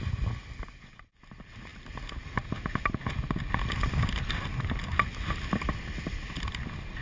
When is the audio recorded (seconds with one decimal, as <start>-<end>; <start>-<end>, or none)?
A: 0.0-7.0